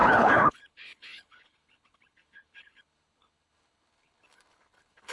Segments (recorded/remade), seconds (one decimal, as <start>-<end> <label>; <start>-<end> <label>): 0.0-5.1 remade